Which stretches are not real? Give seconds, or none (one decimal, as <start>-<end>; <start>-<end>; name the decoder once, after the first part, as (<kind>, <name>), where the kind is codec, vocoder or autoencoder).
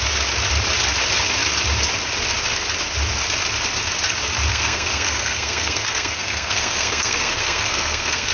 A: 4.5-8.3 (codec, SNAC)